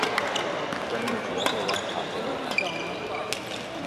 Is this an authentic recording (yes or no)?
yes